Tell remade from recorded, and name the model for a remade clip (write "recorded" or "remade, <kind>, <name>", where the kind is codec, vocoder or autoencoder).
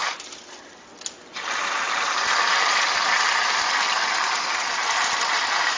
recorded